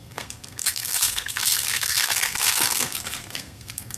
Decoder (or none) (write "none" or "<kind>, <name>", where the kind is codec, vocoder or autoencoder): codec, SNAC